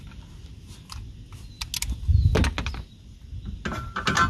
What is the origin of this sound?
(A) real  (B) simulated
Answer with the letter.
A